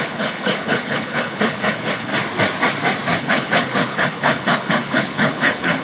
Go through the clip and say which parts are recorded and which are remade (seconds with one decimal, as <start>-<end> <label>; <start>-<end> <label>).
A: 0.0-2.1 remade; 2.1-3.2 recorded; 3.2-5.8 remade